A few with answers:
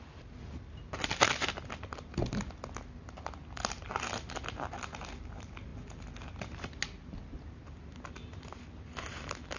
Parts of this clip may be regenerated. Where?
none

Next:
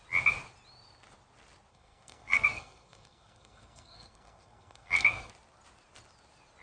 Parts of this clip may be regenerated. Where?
1.7-5.3 (codec, SNAC)

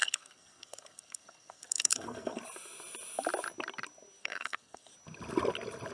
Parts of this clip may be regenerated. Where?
0.0-2.4 (codec, SNAC); 4.2-4.9

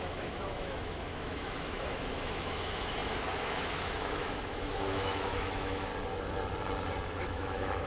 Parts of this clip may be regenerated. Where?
0.0-5.9 (autoencoder, DAC-VAE); 7.2-7.9

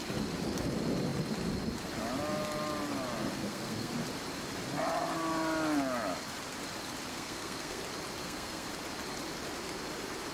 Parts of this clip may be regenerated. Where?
3.4-3.9 (codec, SNAC); 7.1-7.8; 8.2-8.7

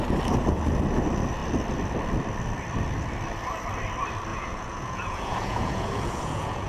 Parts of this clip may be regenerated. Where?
4.3-6.7 (vocoder, Vocos)

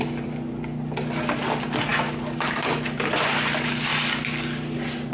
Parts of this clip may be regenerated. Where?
none

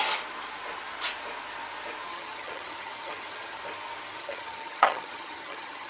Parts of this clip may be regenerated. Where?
2.1-3.6 (vocoder, HiFi-GAN); 4.2-5.9